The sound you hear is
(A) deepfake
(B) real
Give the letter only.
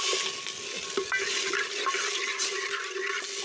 B